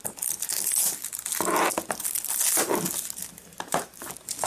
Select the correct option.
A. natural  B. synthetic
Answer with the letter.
A